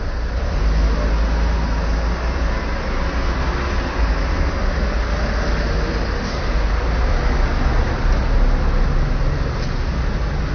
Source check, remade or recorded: recorded